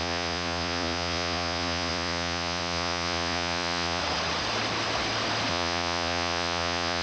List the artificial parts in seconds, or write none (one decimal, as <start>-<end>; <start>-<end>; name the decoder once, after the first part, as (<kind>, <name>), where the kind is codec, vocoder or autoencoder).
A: 0.0-4.0 (vocoder, Vocos); 5.5-7.0